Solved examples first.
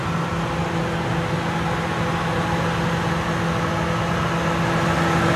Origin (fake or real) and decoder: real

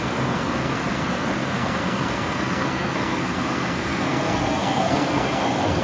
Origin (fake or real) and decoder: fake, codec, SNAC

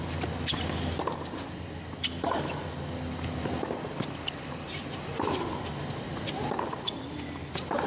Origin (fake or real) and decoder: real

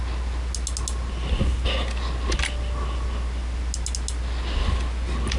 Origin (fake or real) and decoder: real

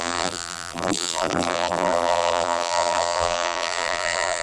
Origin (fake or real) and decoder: fake, vocoder, BigVGAN v2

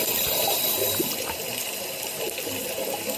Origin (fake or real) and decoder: real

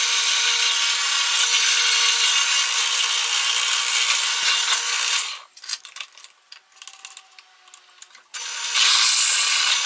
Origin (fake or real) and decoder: real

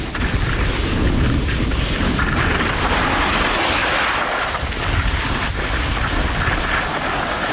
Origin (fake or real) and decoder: real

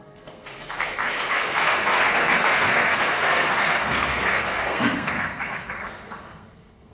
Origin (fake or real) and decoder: fake, codec, SNAC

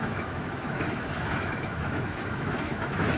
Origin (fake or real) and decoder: fake, autoencoder, DAC-VAE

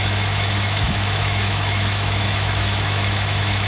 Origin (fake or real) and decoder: fake, autoencoder, DAC-VAE